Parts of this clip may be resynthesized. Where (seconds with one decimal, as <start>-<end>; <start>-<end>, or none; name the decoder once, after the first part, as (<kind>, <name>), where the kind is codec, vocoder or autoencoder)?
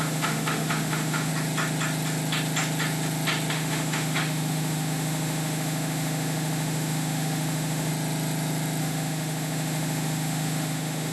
0.0-1.3 (autoencoder, DAC-VAE); 3.5-7.9; 8.8-11.1